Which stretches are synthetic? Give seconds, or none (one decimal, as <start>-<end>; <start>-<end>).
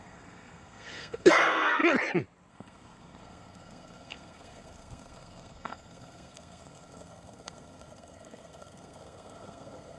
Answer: 0.0-1.8; 2.5-10.0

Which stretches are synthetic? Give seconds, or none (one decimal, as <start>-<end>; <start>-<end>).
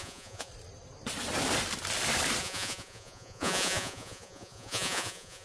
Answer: 0.0-0.5; 2.4-5.4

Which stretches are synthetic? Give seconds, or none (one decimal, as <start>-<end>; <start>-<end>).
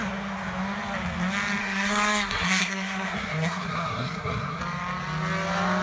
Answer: 1.6-4.6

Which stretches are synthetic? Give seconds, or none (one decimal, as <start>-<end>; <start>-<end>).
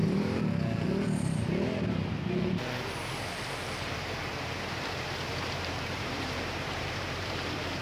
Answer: 3.8-7.8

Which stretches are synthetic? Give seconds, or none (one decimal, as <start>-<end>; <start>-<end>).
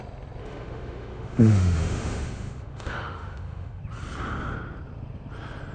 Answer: 0.4-3.8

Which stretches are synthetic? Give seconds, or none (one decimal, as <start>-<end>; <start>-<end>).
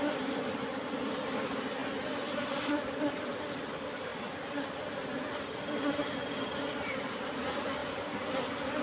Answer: 0.0-1.8; 2.5-4.1; 6.6-7.8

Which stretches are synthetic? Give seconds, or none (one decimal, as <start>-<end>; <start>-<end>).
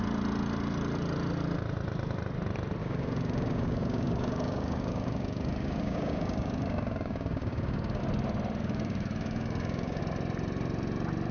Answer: 2.8-8.0; 8.6-10.0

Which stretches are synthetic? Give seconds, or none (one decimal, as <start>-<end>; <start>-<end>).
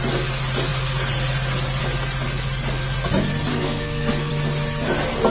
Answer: 3.5-4.3